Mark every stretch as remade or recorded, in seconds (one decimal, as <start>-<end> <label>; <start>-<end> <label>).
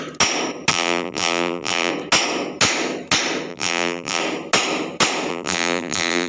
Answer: 0.0-0.7 recorded; 0.7-1.9 remade; 1.9-3.5 recorded; 3.5-4.2 remade; 4.2-5.3 recorded; 5.3-6.3 remade